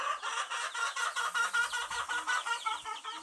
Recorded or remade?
recorded